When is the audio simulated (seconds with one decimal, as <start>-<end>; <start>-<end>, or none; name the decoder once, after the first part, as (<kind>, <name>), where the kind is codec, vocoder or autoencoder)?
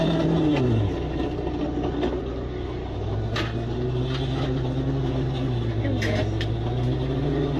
none